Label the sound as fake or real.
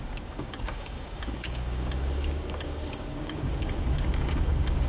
fake